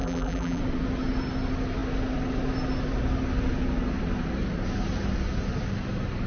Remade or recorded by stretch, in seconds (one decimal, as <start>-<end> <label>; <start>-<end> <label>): 0.0-0.6 remade; 0.6-6.3 recorded